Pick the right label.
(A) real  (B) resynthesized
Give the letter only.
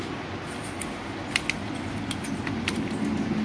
A